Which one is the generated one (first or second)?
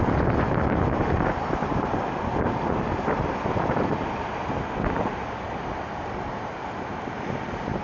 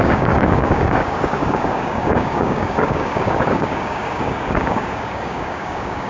second